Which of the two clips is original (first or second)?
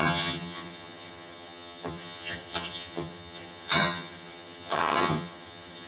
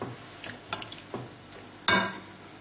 second